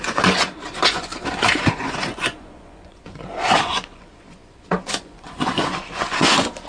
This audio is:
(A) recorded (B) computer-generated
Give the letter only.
B